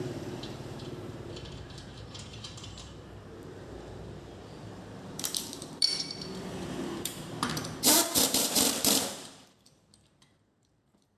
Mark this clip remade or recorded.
remade